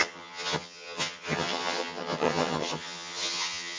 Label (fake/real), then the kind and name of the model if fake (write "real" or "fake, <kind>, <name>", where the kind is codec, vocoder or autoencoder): fake, vocoder, HiFi-GAN